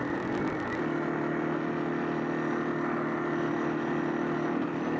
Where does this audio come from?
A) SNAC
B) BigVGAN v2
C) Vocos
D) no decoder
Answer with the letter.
D